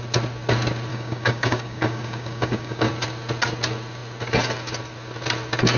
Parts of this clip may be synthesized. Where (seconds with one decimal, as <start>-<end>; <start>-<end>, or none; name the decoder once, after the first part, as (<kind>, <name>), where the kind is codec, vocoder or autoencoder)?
0.9-2.9 (codec, DAC)